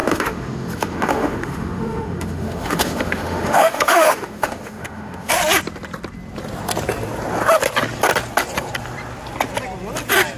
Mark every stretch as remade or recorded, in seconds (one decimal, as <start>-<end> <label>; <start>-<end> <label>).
0.0-5.3 remade; 5.3-10.4 recorded